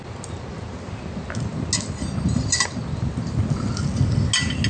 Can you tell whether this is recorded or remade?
recorded